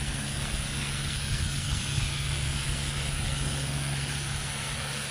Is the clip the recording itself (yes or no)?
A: no